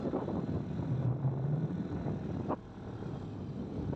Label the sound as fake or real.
real